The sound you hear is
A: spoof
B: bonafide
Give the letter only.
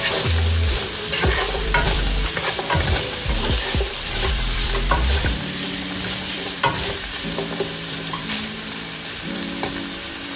A